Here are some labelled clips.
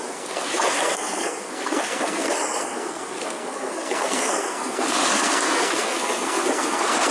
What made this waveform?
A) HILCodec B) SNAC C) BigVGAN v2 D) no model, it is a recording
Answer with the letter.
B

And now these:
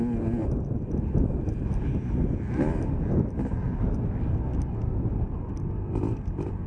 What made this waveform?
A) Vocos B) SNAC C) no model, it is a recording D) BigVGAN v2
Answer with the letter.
C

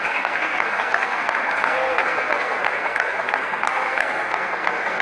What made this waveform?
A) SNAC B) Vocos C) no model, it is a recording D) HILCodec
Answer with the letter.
A